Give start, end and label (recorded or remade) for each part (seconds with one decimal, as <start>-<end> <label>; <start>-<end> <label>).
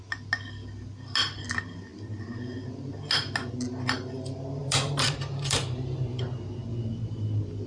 0.0-4.6 recorded; 4.6-6.2 remade; 6.2-7.7 recorded